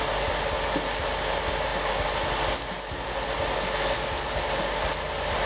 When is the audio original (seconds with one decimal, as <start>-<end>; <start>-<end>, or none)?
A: 0.0-5.5